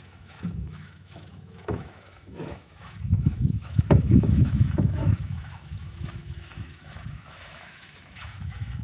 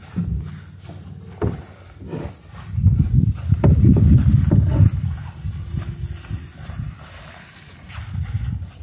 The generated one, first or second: first